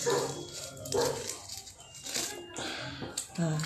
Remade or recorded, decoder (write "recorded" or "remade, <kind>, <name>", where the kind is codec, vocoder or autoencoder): recorded